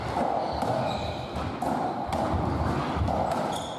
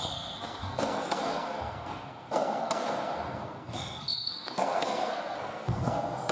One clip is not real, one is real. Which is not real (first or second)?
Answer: second